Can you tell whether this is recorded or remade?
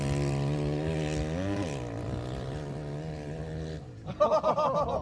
recorded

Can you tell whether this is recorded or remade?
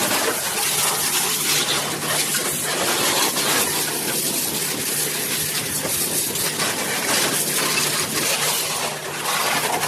recorded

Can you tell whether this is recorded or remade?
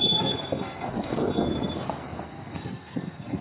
remade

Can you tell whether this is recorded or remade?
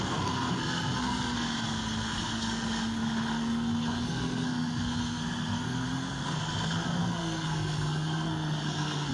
remade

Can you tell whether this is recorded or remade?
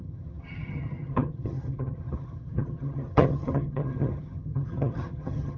remade